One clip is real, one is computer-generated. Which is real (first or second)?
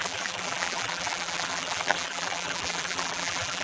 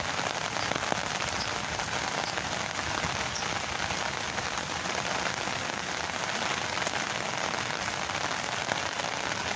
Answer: second